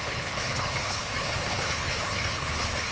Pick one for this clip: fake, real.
fake